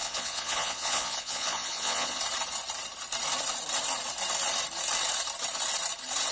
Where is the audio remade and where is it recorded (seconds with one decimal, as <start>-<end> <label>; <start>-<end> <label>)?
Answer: 0.0-2.2 remade; 2.2-6.3 recorded